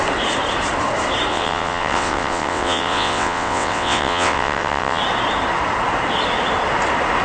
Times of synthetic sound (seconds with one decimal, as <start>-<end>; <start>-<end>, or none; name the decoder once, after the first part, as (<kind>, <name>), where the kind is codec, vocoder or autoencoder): 1.3-5.0 (vocoder, WaveNeXt)